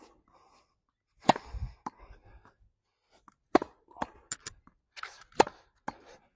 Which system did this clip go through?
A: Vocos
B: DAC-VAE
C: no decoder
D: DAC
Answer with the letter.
C